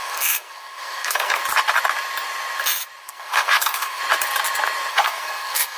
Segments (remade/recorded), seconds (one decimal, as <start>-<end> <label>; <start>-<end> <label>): 0.0-1.4 remade; 1.4-3.0 recorded; 3.0-4.0 remade; 4.0-4.9 recorded; 4.9-5.8 remade